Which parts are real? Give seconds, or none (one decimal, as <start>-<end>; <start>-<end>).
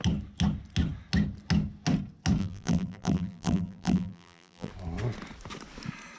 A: 0.0-2.4; 4.7-6.2